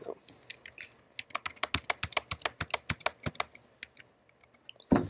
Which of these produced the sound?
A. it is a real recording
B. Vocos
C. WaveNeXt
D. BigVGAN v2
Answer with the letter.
A